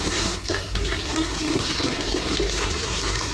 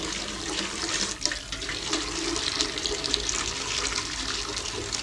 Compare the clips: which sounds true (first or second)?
second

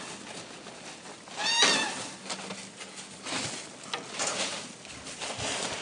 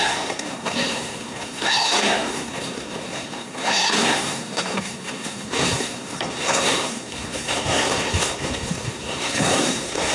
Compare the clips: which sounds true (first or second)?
first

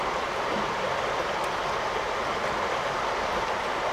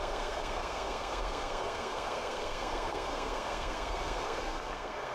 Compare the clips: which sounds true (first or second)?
first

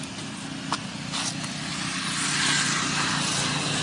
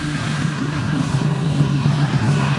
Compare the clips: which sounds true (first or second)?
first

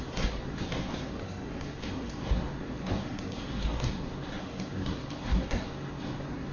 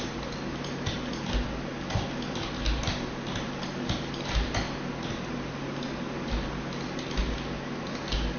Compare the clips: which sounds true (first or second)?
second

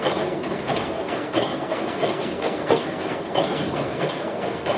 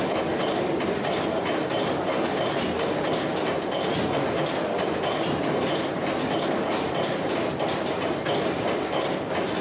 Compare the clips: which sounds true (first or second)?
second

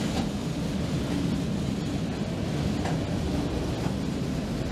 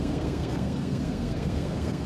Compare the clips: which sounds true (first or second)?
first